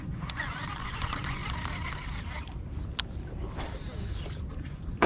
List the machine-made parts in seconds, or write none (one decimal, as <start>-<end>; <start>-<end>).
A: 0.0-1.4; 4.5-5.1